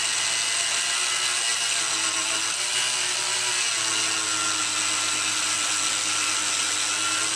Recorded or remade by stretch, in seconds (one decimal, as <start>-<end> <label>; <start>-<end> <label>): 0.0-7.4 recorded